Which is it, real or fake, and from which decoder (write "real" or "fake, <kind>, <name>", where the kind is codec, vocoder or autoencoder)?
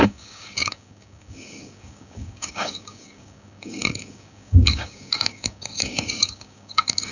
fake, codec, DAC